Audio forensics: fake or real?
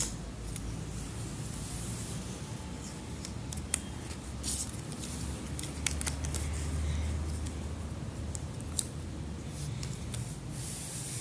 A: real